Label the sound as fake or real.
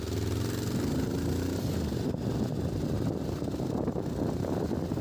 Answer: real